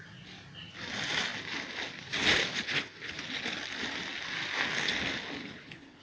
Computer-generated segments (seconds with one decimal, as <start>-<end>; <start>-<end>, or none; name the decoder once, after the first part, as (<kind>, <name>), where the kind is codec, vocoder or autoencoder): 2.4-3.2 (codec, HILCodec); 5.4-6.0